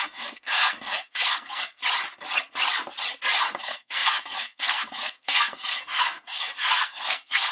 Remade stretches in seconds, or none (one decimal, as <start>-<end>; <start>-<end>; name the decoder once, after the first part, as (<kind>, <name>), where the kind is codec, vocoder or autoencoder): 0.0-1.8 (codec, SNAC); 3.6-7.5